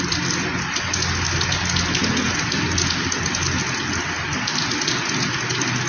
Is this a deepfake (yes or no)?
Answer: no